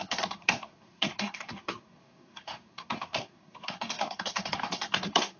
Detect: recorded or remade remade